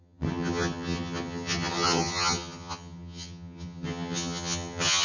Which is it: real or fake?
fake